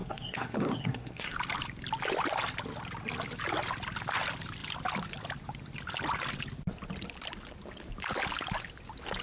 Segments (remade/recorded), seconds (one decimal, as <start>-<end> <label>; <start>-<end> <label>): 0.0-1.4 remade; 1.4-9.2 recorded